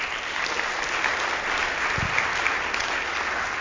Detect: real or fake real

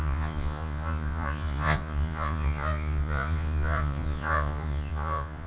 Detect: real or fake fake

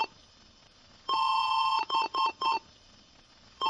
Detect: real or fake fake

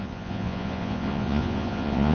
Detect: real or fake fake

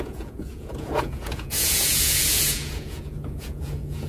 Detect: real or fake fake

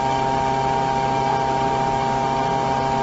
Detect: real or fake real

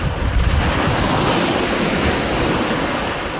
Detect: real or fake real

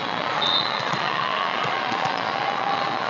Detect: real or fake fake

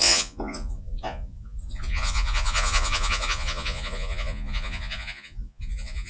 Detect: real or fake fake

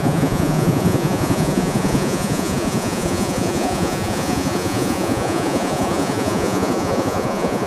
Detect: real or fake fake